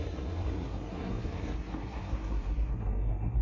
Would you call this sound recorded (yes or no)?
no